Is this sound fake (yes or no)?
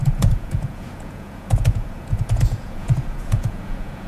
yes